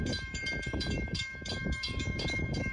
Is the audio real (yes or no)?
no